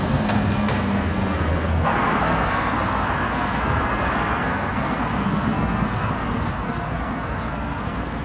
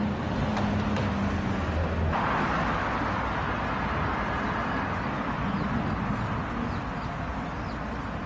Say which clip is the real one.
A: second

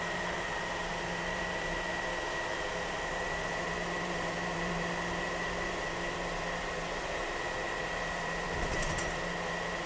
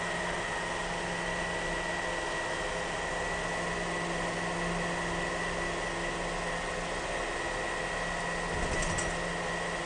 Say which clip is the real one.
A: second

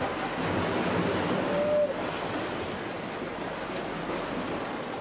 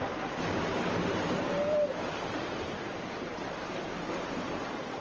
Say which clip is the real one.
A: first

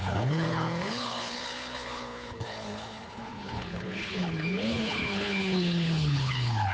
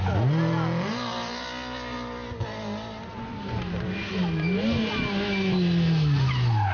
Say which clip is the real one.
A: second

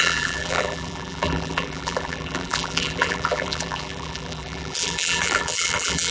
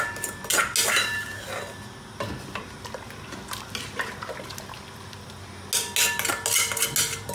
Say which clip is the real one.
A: second